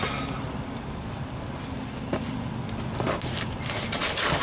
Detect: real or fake real